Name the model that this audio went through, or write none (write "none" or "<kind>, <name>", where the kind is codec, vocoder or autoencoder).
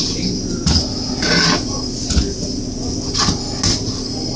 none